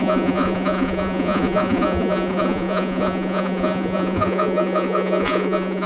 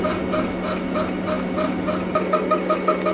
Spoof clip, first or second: first